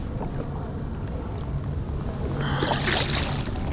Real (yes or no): yes